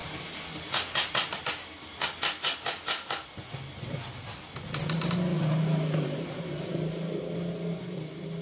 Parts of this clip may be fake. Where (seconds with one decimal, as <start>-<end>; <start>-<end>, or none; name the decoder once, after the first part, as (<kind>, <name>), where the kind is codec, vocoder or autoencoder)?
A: 5.3-7.2 (vocoder, BigVGAN v2)